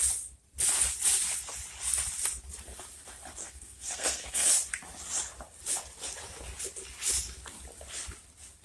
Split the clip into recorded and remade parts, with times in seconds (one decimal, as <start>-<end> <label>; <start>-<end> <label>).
0.0-3.4 recorded; 3.4-4.5 remade; 4.5-8.6 recorded